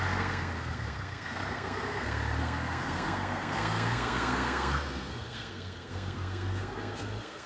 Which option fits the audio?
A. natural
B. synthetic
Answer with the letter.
B